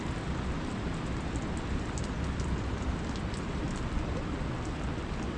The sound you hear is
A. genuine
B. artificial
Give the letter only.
A